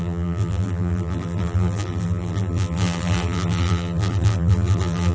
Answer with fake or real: fake